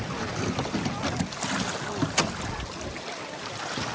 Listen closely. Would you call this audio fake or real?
real